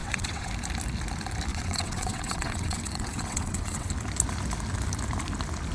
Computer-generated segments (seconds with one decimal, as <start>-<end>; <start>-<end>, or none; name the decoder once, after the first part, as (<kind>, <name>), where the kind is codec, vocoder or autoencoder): 0.0-0.5 (vocoder, WaveNeXt); 1.5-3.9